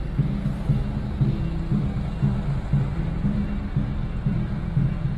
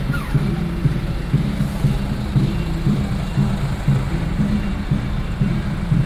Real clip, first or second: first